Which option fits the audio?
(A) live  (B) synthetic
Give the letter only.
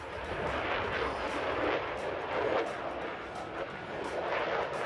A